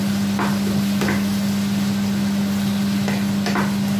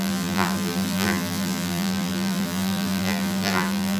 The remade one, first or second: second